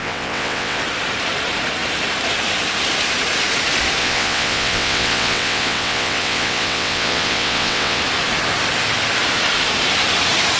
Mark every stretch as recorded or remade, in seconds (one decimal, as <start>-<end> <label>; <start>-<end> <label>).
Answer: 0.0-0.8 remade; 0.8-4.0 recorded; 4.0-8.0 remade; 8.0-10.6 recorded